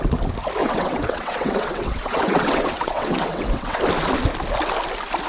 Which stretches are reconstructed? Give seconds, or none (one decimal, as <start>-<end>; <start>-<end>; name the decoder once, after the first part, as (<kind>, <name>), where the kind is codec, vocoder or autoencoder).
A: 0.6-3.8 (vocoder, WaveNeXt)